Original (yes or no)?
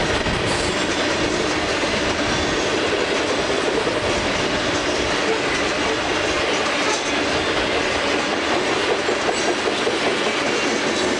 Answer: yes